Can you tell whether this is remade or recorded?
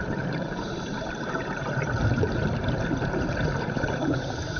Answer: remade